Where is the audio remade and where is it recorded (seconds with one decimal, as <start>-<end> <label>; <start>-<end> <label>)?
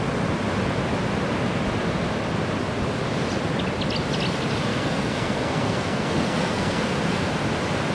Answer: 0.0-4.7 recorded; 4.7-7.3 remade; 7.3-7.9 recorded